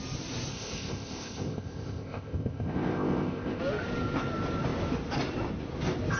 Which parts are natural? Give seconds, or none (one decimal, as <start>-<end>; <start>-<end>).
0.0-0.5; 3.6-6.2